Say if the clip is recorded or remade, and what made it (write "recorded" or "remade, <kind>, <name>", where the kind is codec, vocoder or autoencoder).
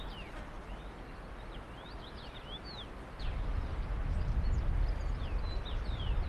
recorded